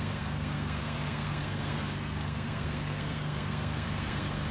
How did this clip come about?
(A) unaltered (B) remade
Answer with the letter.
B